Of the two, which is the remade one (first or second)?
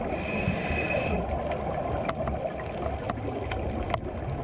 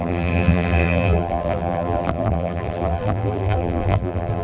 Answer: second